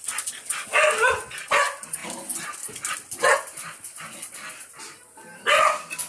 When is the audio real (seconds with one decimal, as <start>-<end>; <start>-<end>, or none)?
0.0-6.1